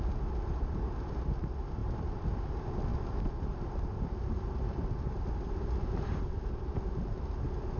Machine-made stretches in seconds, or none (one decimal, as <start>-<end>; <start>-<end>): 6.1-6.8